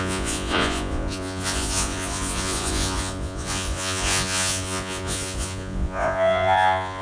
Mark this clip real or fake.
fake